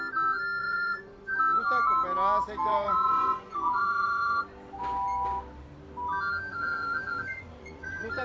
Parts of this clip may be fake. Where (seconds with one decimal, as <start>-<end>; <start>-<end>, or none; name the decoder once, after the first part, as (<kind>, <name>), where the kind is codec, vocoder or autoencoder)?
0.6-1.4 (vocoder, Vocos); 2.7-4.4; 6.5-8.2